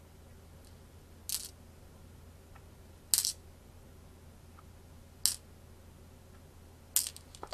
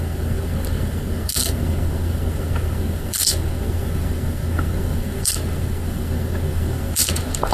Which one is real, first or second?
first